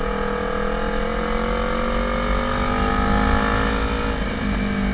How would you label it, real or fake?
real